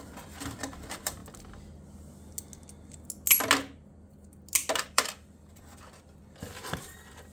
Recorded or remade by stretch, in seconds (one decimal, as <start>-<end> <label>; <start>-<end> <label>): 0.0-1.2 remade; 1.2-4.8 recorded; 4.8-7.3 remade

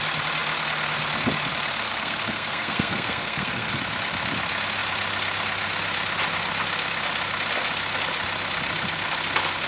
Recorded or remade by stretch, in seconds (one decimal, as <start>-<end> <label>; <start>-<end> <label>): 0.0-1.9 recorded; 1.9-3.7 remade; 3.7-9.7 recorded

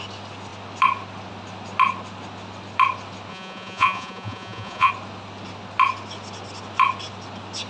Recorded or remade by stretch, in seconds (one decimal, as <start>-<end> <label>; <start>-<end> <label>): 0.0-3.3 recorded; 3.3-4.9 remade; 4.9-7.7 recorded